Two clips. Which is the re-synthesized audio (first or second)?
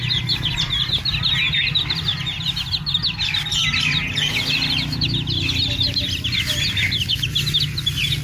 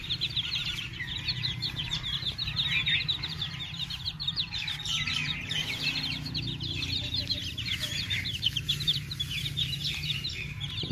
second